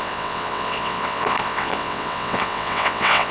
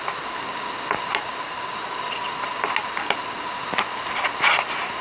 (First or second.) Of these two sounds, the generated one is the first